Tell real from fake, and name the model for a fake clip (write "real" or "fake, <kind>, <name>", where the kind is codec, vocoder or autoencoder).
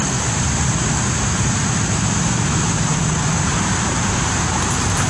fake, vocoder, BigVGAN v2